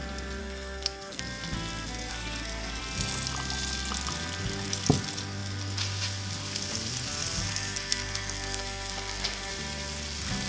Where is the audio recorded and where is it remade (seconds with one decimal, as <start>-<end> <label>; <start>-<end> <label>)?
0.0-0.4 recorded; 0.4-1.2 remade; 1.2-2.1 recorded; 2.1-2.8 remade; 2.8-7.5 recorded; 7.5-9.5 remade; 9.5-10.5 recorded